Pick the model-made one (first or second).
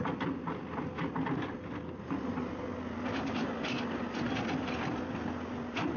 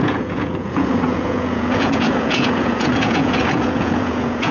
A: second